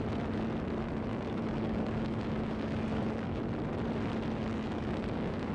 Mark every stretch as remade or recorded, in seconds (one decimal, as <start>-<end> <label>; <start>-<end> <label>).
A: 0.0-1.1 recorded; 1.1-3.4 remade; 3.4-4.5 recorded; 4.5-5.5 remade